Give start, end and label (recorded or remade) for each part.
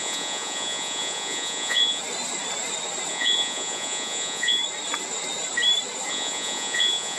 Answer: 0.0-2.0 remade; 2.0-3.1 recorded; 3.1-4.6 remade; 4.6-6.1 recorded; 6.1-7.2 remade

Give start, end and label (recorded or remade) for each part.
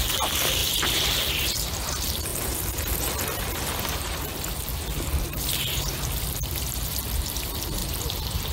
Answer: 0.0-2.3 remade; 2.3-3.8 recorded; 3.8-7.8 remade; 7.8-8.5 recorded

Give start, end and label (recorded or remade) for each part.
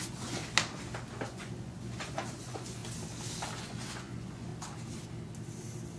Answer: 0.0-0.4 remade; 0.4-1.3 recorded; 1.3-2.8 remade; 2.8-3.6 recorded; 3.6-4.5 remade; 4.5-6.0 recorded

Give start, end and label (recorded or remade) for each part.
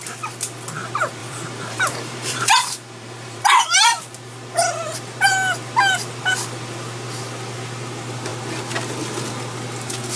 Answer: 0.0-1.2 recorded; 1.2-4.0 remade; 4.0-10.2 recorded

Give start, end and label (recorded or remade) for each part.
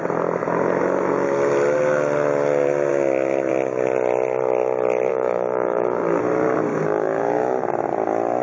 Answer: 0.0-5.1 recorded; 5.1-6.2 remade; 6.2-6.7 recorded; 6.7-7.6 remade; 7.6-8.4 recorded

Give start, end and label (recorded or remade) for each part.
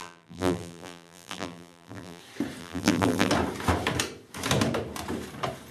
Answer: 0.0-2.2 remade; 2.2-2.6 recorded; 2.6-3.3 remade; 3.3-5.7 recorded